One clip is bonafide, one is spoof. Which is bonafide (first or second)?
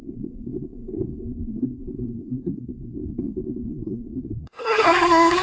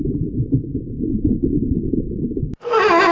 second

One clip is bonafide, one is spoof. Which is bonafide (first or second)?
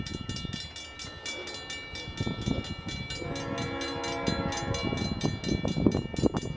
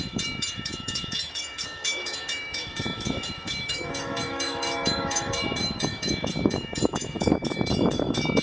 first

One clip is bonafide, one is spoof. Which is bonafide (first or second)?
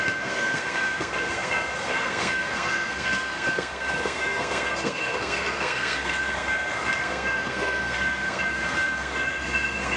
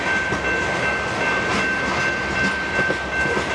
second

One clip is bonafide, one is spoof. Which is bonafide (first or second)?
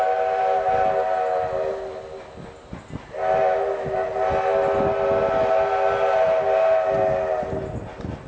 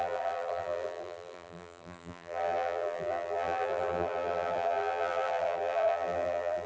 first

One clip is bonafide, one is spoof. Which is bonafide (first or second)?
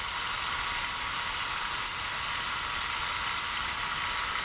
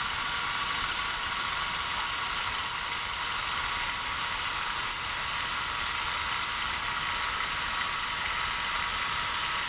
second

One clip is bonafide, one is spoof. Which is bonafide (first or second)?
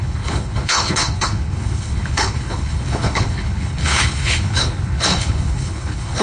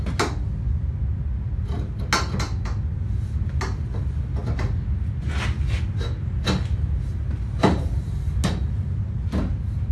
second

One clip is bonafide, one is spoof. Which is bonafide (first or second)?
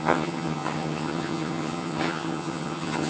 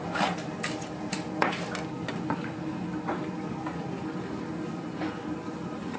second